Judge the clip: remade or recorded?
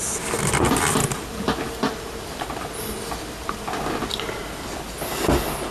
recorded